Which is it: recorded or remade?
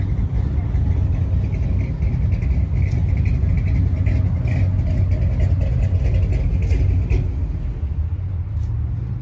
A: recorded